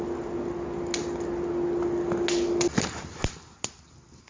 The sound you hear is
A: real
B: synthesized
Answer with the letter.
A